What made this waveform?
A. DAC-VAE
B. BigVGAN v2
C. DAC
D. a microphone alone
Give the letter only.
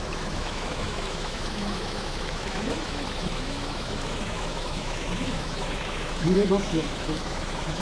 A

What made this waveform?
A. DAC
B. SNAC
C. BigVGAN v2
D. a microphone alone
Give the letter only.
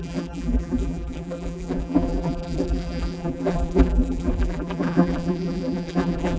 C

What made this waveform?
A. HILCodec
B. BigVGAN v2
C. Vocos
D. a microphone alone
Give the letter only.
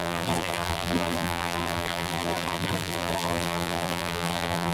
B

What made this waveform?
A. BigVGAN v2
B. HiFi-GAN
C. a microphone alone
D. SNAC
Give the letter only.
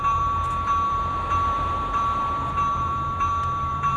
A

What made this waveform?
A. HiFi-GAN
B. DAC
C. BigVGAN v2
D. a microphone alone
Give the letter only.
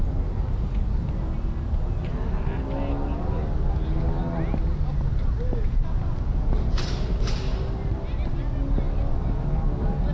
D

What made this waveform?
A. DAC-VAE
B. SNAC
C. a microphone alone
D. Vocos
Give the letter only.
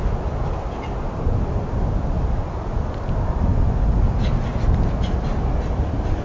C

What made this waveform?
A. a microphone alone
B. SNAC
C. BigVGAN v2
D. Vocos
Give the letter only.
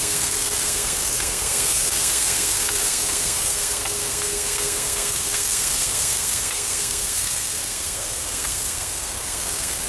B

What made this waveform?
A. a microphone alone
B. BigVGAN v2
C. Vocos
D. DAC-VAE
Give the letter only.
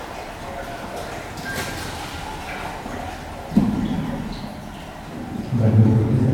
A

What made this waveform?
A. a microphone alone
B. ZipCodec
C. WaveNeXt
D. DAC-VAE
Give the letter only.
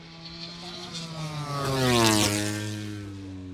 A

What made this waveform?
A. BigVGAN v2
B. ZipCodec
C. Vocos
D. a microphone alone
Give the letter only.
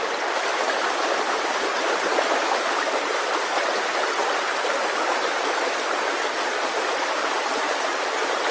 A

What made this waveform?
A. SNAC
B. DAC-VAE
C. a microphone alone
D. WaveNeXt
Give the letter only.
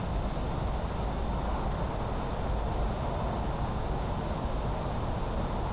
C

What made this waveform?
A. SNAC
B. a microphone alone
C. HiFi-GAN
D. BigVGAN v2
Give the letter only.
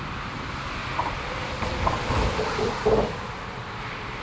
B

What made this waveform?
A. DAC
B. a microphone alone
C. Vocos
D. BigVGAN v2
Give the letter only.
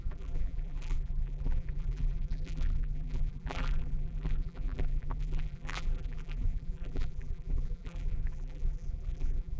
D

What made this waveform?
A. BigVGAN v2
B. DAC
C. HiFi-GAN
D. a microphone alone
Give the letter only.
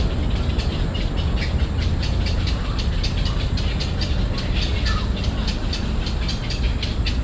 D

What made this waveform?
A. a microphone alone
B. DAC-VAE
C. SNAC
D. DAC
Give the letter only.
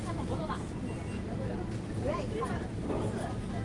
A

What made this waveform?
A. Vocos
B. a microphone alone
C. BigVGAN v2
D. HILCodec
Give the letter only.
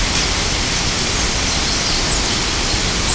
C